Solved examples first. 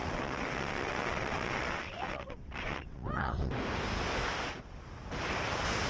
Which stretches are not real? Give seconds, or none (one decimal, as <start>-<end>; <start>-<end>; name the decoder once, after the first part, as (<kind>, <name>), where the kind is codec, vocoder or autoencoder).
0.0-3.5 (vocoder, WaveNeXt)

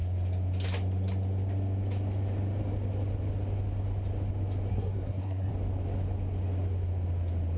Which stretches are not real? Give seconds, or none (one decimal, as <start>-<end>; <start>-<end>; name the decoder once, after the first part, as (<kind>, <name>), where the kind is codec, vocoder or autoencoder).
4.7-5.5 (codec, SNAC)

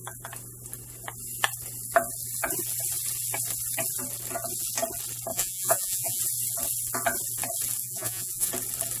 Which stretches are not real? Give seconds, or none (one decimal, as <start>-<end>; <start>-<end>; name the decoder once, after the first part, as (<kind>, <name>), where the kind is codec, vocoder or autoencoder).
5.3-6.2 (vocoder, Vocos); 7.8-8.5